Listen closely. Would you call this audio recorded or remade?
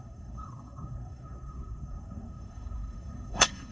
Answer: remade